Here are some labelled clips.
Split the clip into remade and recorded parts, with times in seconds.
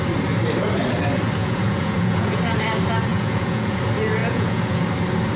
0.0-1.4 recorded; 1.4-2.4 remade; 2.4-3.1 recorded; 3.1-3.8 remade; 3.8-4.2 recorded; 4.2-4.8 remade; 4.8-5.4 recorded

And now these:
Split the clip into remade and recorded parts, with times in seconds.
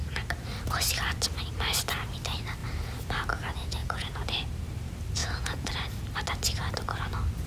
0.0-3.8 recorded; 3.8-4.3 remade; 4.3-5.2 recorded; 5.2-5.7 remade; 5.7-7.5 recorded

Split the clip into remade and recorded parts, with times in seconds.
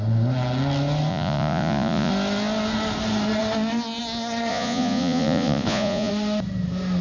0.0-1.1 recorded; 1.1-2.1 remade; 2.1-4.5 recorded; 4.5-6.1 remade; 6.1-7.0 recorded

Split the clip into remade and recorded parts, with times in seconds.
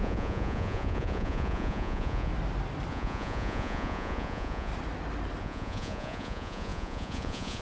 0.0-2.3 remade; 2.3-2.9 recorded; 2.9-4.7 remade; 4.7-5.4 recorded; 5.4-7.6 remade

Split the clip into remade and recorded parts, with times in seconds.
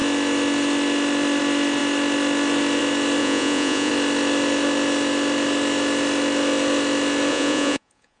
0.0-3.2 recorded; 3.2-3.9 remade; 3.9-7.3 recorded; 7.3-8.2 remade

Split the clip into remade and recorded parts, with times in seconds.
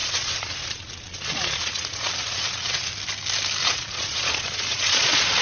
0.0-2.9 remade; 2.9-3.6 recorded; 3.6-5.4 remade